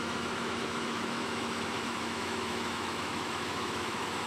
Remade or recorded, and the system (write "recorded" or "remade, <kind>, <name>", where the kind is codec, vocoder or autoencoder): remade, autoencoder, DAC-VAE